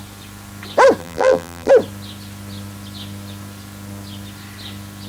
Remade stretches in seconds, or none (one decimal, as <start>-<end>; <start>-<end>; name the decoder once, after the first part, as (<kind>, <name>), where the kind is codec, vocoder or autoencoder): 1.0-1.7 (vocoder, BigVGAN v2)